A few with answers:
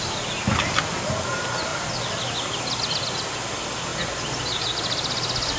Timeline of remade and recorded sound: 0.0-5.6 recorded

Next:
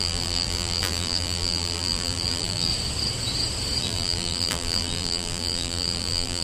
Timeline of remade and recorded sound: 0.0-2.7 remade; 2.7-3.8 recorded; 3.8-6.4 remade

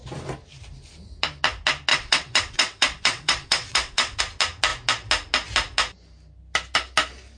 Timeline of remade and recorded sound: 0.0-1.9 recorded; 1.9-4.2 remade; 4.2-7.4 recorded

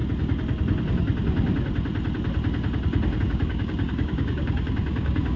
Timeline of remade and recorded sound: 0.0-3.2 recorded; 3.2-5.4 remade

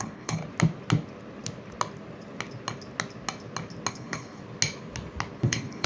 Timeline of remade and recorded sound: 0.0-0.4 remade; 0.4-3.9 recorded; 3.9-4.4 remade; 4.4-5.4 recorded; 5.4-5.9 remade

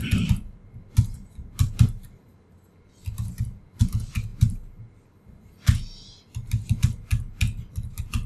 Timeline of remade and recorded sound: 0.0-2.3 remade; 2.3-3.6 recorded; 3.6-4.3 remade; 4.3-7.7 recorded; 7.7-8.3 remade

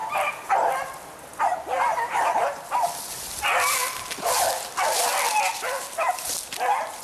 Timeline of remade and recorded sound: 0.0-0.5 remade; 0.5-1.9 recorded; 1.9-2.4 remade; 2.4-7.0 recorded

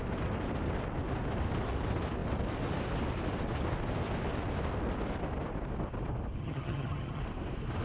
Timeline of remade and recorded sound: 0.0-6.4 recorded; 6.4-7.2 remade; 7.2-7.8 recorded